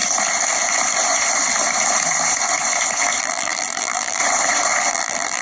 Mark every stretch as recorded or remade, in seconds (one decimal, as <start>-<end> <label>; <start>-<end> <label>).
0.0-3.2 recorded; 3.2-4.2 remade; 4.2-4.9 recorded; 4.9-5.4 remade